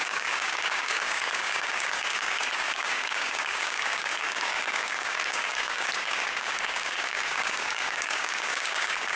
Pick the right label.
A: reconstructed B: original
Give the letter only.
A